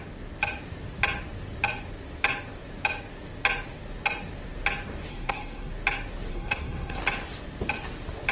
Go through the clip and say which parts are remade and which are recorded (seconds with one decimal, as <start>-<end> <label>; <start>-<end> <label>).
0.0-5.1 recorded; 5.1-5.7 remade; 5.7-6.3 recorded; 6.3-7.0 remade; 7.0-8.3 recorded